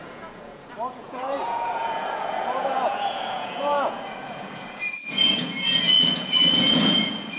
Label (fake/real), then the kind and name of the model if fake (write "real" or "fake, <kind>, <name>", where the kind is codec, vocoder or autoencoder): fake, vocoder, Vocos